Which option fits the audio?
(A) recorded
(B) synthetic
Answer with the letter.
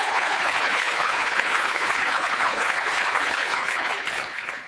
B